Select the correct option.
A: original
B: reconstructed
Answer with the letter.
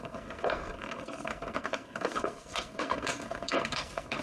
B